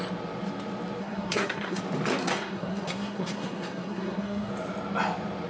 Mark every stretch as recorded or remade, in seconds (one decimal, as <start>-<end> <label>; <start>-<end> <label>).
0.0-1.0 recorded; 1.0-1.8 remade; 1.8-2.2 recorded; 2.2-4.5 remade; 4.5-5.5 recorded